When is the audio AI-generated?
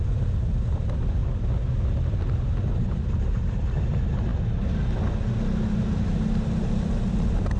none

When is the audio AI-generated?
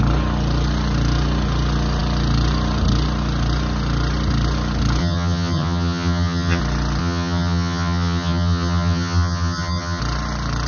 5.0-6.6 (vocoder, HiFi-GAN); 7.0-10.0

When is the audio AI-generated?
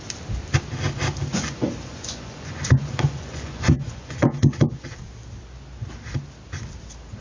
1.3-4.9 (vocoder, Vocos)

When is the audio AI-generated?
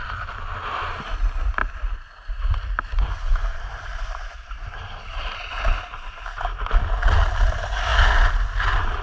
3.4-5.4 (vocoder, BigVGAN v2)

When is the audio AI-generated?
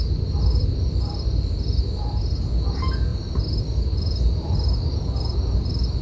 none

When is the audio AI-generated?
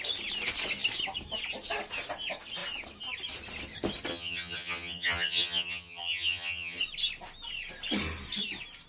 4.1-6.8 (vocoder, HiFi-GAN)